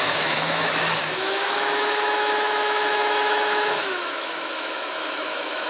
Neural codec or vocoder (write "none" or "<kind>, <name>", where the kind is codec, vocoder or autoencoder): autoencoder, DAC-VAE